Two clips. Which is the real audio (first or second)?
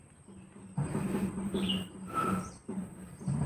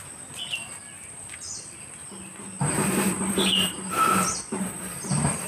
second